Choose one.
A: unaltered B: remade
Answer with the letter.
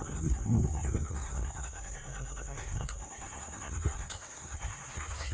B